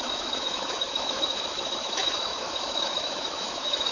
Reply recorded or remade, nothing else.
remade